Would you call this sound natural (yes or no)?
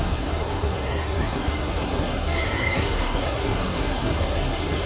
no